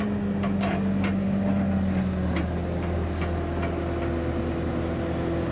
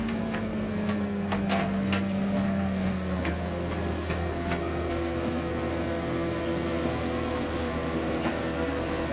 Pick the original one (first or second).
first